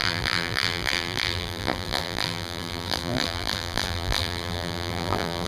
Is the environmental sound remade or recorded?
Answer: remade